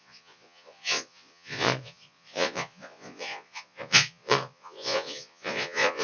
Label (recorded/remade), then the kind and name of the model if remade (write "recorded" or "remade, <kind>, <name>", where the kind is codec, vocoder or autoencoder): remade, vocoder, Vocos